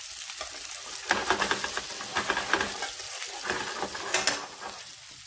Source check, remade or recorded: recorded